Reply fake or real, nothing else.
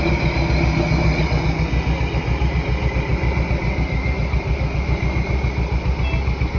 real